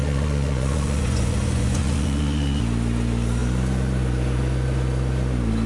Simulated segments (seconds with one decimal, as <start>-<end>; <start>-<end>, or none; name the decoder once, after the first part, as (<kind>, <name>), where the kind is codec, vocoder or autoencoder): 0.0-2.6 (vocoder, Vocos)